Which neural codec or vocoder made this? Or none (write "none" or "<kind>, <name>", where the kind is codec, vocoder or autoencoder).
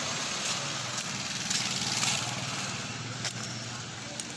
none